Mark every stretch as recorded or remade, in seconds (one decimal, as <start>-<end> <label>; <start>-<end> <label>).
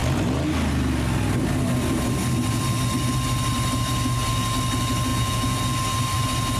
0.0-5.1 recorded; 5.1-5.6 remade; 5.6-6.6 recorded